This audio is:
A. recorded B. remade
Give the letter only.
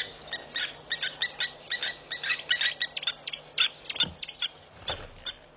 A